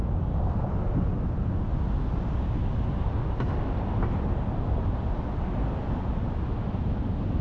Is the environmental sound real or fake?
real